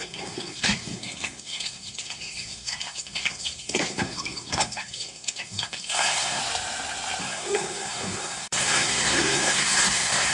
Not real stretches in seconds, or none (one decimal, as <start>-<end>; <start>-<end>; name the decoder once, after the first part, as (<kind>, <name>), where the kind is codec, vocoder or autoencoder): 0.0-6.4 (codec, SNAC); 7.2-10.3